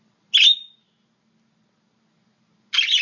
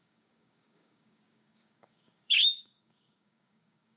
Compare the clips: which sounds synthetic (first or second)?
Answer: second